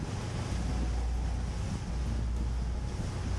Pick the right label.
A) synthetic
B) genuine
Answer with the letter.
B